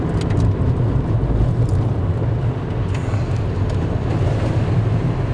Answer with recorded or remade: recorded